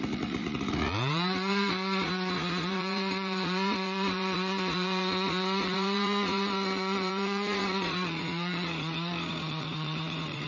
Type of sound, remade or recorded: remade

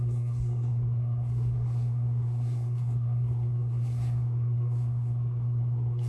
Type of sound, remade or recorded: remade